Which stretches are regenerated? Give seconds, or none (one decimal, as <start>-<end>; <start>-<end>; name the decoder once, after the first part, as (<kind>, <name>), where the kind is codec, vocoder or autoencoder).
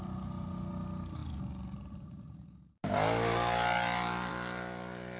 none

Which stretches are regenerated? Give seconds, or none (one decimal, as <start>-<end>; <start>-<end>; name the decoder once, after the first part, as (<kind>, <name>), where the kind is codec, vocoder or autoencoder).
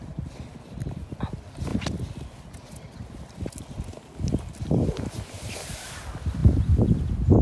none